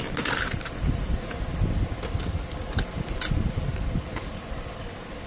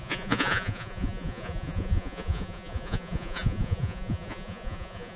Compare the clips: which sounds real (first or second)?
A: first